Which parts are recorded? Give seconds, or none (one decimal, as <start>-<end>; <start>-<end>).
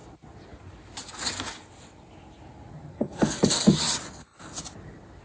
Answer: 0.0-2.9; 3.6-5.2